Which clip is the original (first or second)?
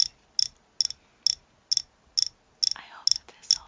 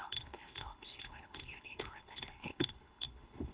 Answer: first